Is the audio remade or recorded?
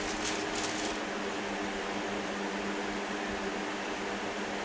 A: recorded